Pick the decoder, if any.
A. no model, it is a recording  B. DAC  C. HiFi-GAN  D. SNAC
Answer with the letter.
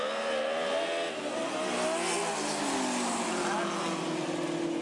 A